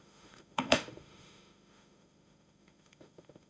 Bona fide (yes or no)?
no